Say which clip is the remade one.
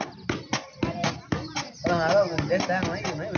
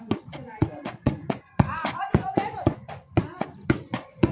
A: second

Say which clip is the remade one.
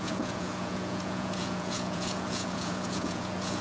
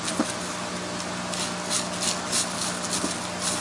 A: first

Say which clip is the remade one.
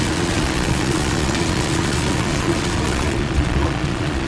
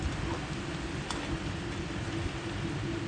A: first